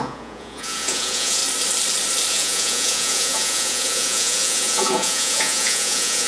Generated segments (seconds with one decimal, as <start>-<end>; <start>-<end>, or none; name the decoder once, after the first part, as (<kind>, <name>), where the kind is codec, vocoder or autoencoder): 0.0-1.4 (vocoder, Vocos); 2.3-6.3